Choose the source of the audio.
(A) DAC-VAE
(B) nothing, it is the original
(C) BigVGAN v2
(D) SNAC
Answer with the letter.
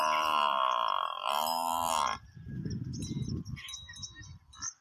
C